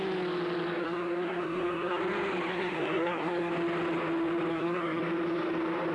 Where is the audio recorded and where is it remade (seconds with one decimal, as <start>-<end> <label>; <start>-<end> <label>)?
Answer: 0.0-0.8 recorded; 0.8-2.0 remade; 2.0-2.5 recorded; 2.5-3.5 remade; 3.5-4.5 recorded; 4.5-5.0 remade; 5.0-5.9 recorded